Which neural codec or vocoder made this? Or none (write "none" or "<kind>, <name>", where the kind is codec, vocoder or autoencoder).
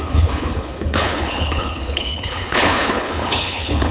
codec, HILCodec